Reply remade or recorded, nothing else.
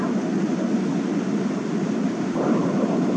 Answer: recorded